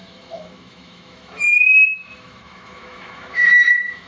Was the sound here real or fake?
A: fake